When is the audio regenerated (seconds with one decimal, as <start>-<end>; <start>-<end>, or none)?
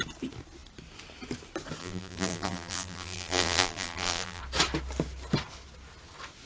1.8-4.4